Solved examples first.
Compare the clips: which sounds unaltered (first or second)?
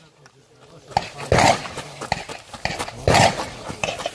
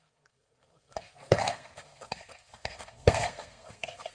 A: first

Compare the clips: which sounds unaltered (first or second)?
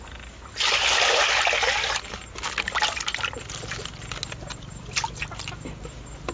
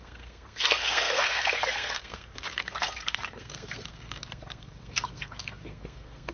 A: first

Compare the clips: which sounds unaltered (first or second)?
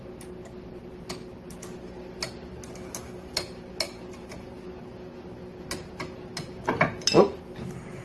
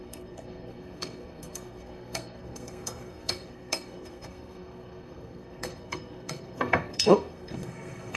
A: first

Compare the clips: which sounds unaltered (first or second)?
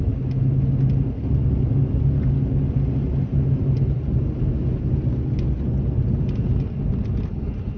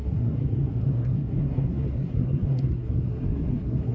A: first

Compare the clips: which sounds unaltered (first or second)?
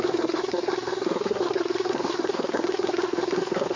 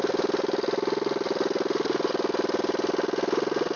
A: second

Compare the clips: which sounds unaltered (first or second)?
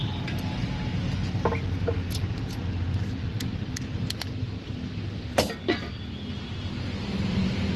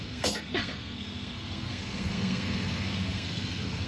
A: first